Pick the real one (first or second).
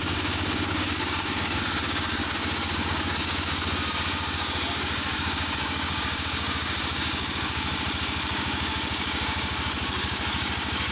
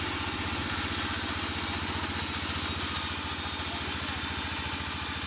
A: second